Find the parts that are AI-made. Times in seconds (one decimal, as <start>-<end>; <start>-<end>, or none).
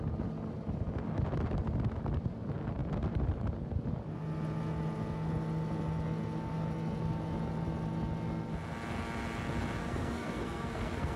9.8-11.2